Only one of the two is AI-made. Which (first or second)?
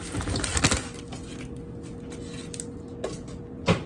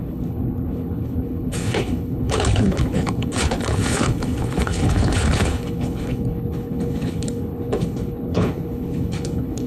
second